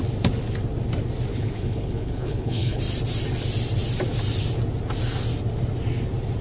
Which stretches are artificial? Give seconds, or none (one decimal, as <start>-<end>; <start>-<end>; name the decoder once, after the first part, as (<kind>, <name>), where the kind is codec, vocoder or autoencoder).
1.3-2.8 (codec, HILCodec)